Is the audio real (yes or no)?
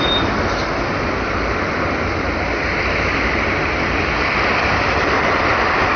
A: yes